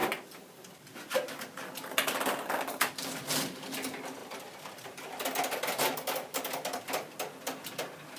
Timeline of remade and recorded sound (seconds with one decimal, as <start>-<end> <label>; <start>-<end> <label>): 0.0-4.2 remade; 4.2-7.3 recorded; 7.3-8.2 remade